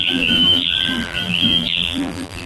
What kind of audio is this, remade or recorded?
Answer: remade